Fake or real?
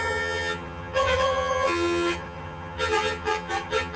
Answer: fake